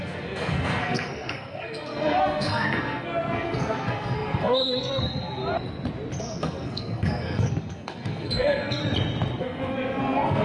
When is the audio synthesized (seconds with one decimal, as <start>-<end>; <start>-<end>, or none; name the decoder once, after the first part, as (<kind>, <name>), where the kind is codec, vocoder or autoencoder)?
0.0-5.4 (codec, SNAC); 6.2-8.8; 9.4-10.4